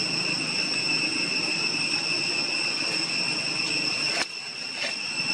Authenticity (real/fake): real